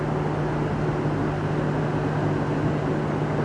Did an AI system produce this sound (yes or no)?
no